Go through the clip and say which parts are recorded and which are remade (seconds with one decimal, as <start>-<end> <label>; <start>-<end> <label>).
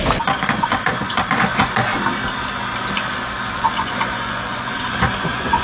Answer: 0.0-1.9 remade; 1.9-3.5 recorded; 3.5-5.6 remade